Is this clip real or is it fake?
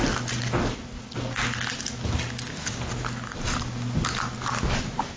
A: real